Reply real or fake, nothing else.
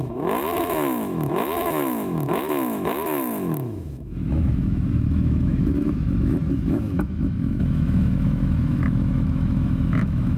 fake